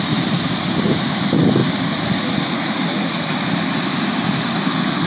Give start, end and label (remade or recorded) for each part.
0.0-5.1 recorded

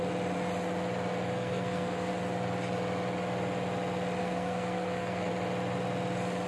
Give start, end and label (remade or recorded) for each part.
0.0-1.3 recorded; 1.3-2.1 remade; 2.1-4.2 recorded; 4.2-5.3 remade; 5.3-6.5 recorded

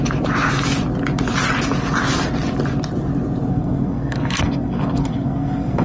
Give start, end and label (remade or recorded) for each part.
0.0-3.5 recorded; 3.5-5.8 remade

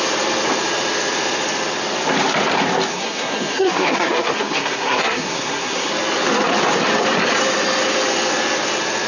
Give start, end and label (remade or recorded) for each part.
0.0-2.9 recorded; 2.9-5.9 remade; 5.9-9.1 recorded

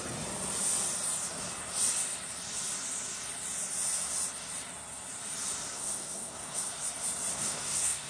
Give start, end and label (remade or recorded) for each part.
0.0-5.7 recorded; 5.7-6.7 remade; 6.7-7.3 recorded; 7.3-8.1 remade

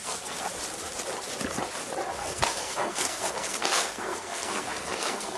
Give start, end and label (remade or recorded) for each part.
0.0-0.5 remade; 0.5-2.2 recorded; 2.2-5.4 remade

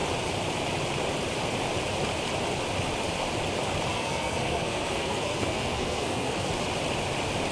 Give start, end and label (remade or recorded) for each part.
0.0-3.9 recorded; 3.9-6.5 remade; 6.5-7.5 recorded